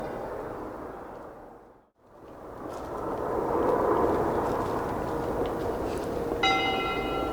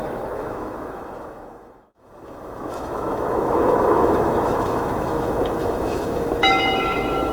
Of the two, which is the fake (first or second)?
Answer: second